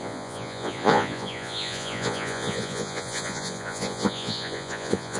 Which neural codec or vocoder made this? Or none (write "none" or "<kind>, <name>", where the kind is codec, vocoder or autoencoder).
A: vocoder, Vocos